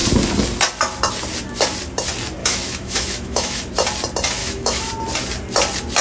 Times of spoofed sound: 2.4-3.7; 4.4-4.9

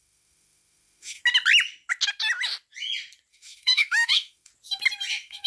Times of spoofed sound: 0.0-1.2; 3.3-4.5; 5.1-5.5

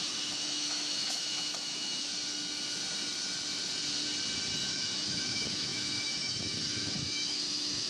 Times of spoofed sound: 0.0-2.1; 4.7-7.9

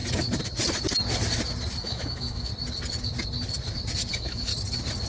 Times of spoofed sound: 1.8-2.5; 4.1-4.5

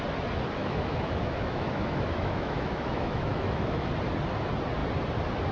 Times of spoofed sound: 0.6-3.9

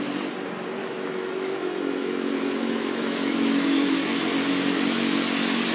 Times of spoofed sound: 0.8-4.2

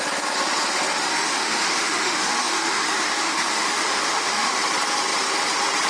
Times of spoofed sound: 1.1-4.6

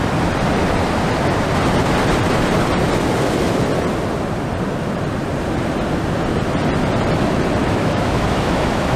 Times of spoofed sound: 7.6-9.0